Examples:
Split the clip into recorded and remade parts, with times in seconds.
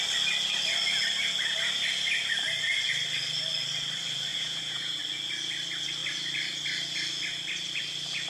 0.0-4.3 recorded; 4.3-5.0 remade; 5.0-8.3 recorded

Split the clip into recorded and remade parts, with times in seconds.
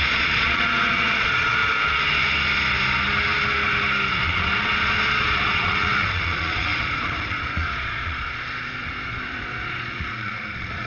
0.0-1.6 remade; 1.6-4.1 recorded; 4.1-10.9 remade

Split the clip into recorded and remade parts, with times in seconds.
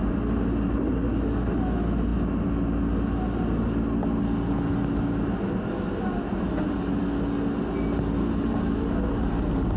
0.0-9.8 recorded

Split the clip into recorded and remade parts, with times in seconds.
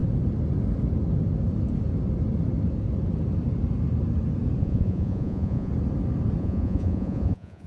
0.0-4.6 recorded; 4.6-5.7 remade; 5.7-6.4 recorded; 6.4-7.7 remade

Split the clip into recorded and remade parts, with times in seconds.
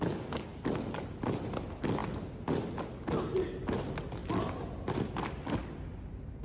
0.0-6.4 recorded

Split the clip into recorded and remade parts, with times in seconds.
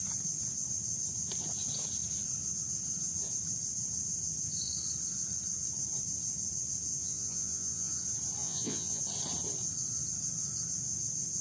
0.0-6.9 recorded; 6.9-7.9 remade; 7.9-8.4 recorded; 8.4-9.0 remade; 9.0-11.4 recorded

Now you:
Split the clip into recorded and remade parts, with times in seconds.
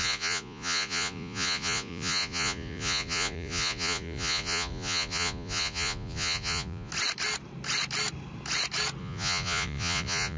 0.0-6.9 remade; 6.9-9.0 recorded; 9.0-10.4 remade